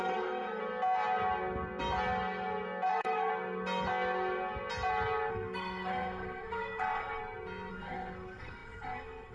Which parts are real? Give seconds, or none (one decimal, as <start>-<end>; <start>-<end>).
0.6-2.9; 3.3-5.3; 7.2-7.7

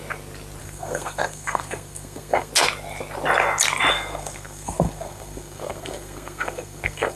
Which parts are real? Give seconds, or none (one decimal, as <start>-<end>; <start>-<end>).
0.0-0.6; 2.5-3.9

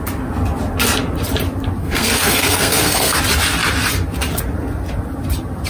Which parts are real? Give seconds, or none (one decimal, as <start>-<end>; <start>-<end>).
0.0-1.8; 3.2-5.7

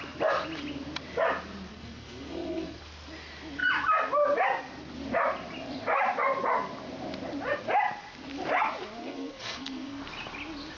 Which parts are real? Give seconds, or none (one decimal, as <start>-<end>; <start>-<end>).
0.0-1.7; 2.8-9.0; 10.0-10.8